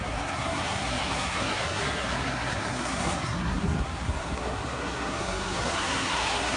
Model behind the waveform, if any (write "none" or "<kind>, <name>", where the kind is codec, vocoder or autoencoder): codec, SNAC